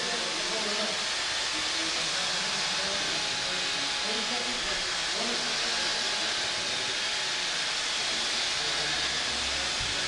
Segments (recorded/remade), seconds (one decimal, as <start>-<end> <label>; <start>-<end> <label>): 0.0-10.1 recorded